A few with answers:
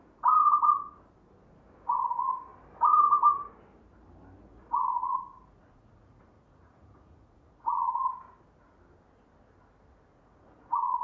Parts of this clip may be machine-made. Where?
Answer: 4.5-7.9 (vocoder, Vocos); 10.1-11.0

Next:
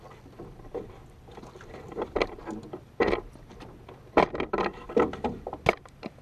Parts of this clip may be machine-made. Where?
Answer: none

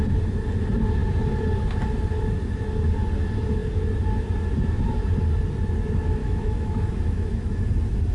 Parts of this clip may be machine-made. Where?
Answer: 6.2-7.6 (autoencoder, DAC-VAE)

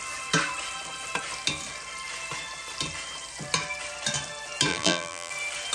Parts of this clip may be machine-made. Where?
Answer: 4.7-5.3 (vocoder, BigVGAN v2)

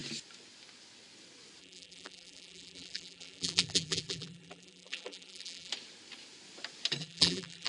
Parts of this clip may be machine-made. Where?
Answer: 1.6-5.7 (vocoder, BigVGAN v2); 7.0-7.7

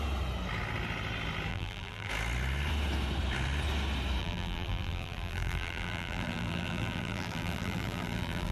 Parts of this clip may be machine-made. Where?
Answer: 1.5-2.1 (vocoder, BigVGAN v2); 4.2-8.5

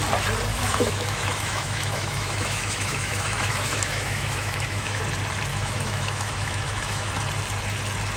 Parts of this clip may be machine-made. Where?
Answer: 0.5-5.0 (autoencoder, DAC-VAE); 5.5-7.1

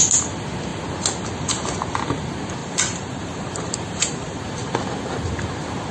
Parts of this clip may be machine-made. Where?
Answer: 2.6-4.4 (vocoder, BigVGAN v2)